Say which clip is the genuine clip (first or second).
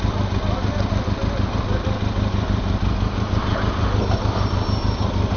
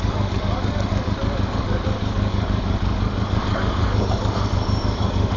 first